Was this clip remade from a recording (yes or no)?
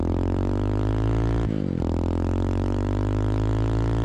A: no